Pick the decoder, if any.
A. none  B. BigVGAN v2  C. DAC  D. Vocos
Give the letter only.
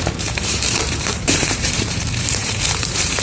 B